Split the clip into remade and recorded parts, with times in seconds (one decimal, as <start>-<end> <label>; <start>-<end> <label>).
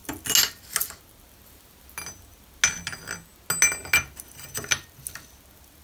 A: 0.0-5.8 recorded